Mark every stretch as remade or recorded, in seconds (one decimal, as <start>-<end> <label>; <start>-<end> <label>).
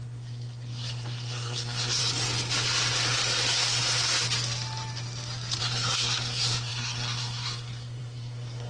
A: 0.0-2.0 remade; 2.0-5.6 recorded; 5.6-8.7 remade